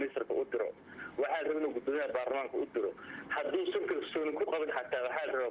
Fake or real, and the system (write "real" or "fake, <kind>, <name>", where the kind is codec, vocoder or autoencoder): real